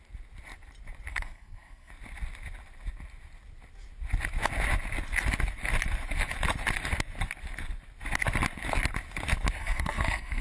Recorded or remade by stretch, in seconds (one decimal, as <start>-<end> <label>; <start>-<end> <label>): 0.0-1.1 recorded; 1.1-1.9 remade; 1.9-9.6 recorded; 9.6-10.4 remade